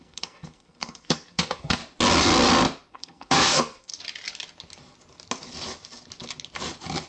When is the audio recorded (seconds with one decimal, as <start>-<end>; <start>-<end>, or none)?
1.8-2.9; 3.9-7.1